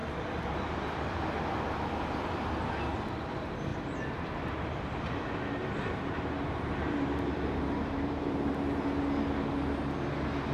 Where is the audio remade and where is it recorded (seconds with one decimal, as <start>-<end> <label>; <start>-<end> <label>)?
0.0-1.0 remade; 1.0-5.6 recorded; 5.6-8.5 remade; 8.5-10.5 recorded